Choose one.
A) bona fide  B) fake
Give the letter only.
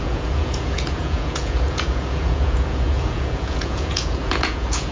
B